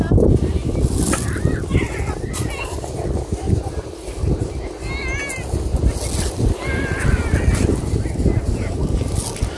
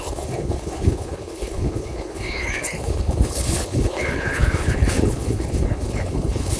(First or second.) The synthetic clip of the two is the second